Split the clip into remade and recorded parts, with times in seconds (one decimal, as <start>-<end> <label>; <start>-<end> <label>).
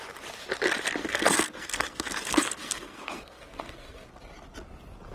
0.0-1.0 recorded; 1.0-4.1 remade; 4.1-5.1 recorded